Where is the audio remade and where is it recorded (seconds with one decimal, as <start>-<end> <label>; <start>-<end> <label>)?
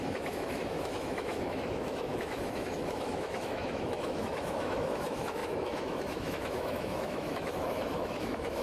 0.0-8.6 remade